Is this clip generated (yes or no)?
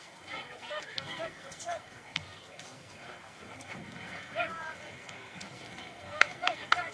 yes